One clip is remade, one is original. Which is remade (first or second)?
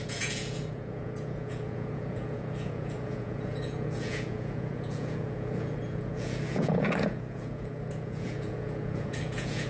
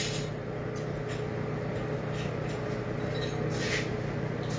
first